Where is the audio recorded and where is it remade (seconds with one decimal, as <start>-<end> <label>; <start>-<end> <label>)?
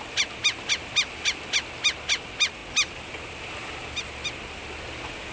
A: 0.0-5.3 recorded